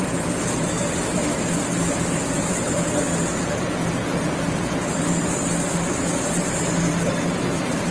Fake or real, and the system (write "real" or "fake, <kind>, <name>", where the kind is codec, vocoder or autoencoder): real